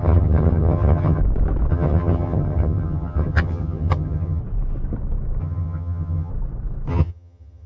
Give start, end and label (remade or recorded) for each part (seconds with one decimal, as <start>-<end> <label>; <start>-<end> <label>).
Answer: 0.0-1.2 remade; 1.2-1.7 recorded; 1.7-4.4 remade; 4.4-5.4 recorded; 5.4-6.3 remade; 6.3-6.9 recorded; 6.9-7.7 remade